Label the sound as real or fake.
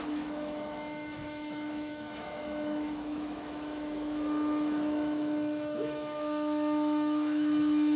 fake